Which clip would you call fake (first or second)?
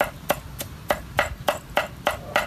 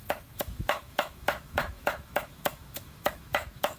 second